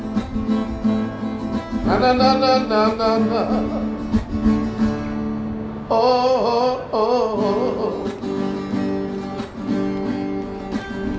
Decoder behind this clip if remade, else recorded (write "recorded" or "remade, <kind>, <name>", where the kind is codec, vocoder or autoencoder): recorded